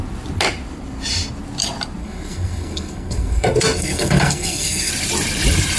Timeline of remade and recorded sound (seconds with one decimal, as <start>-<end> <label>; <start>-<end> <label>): 0.0-2.0 recorded; 2.0-4.9 remade; 4.9-5.8 recorded